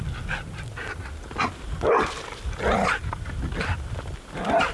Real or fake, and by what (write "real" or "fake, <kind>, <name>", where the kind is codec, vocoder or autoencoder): real